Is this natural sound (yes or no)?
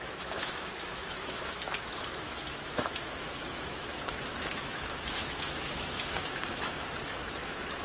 no